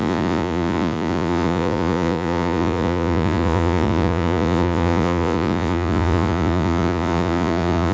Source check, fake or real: fake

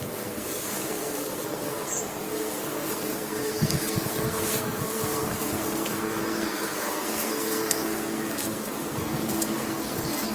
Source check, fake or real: fake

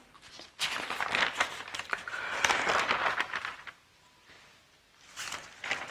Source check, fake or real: real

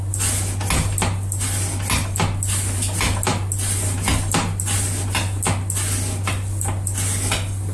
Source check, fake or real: real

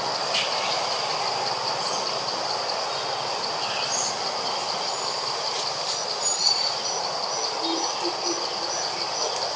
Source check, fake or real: real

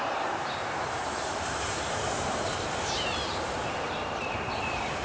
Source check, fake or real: fake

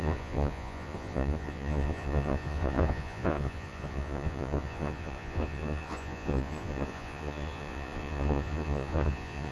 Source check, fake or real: fake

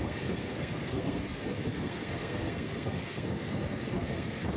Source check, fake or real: fake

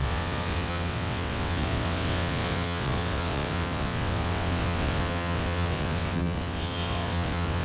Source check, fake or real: fake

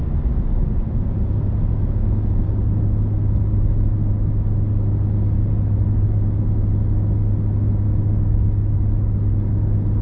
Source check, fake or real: real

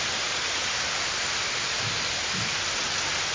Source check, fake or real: real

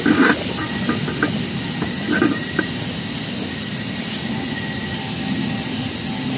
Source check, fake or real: real